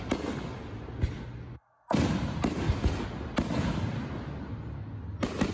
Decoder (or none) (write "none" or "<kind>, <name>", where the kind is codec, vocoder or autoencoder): none